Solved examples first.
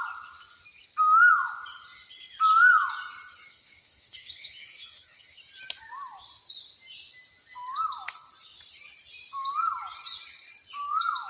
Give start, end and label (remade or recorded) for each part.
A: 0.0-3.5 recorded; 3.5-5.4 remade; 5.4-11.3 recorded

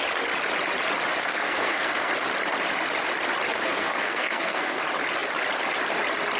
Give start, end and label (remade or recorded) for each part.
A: 0.0-1.2 recorded; 1.2-2.1 remade; 2.1-3.5 recorded; 3.5-4.8 remade; 4.8-6.4 recorded

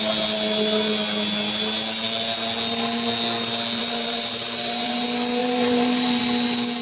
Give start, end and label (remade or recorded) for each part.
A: 0.0-3.8 recorded; 3.8-5.0 remade; 5.0-5.4 recorded; 5.4-6.2 remade; 6.2-6.8 recorded